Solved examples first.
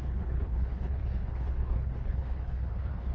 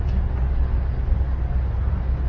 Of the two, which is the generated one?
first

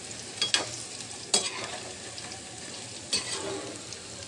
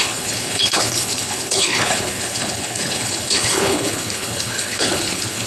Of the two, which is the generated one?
second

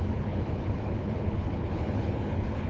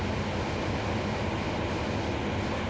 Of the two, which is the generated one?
first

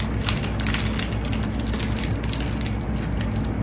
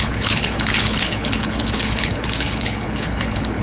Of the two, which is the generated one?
second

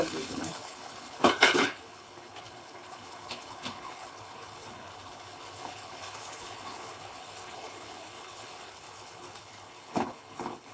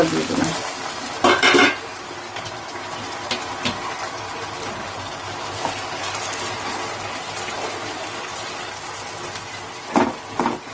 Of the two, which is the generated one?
first